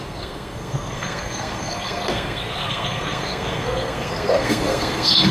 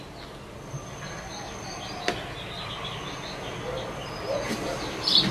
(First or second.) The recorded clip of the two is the second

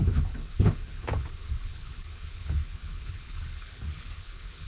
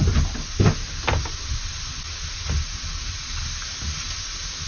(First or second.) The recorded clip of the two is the second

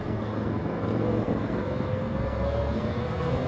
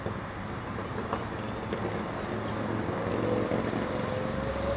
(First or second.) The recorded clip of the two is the second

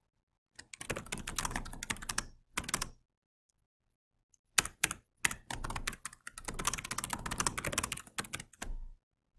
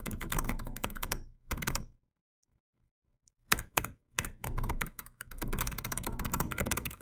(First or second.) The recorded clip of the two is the first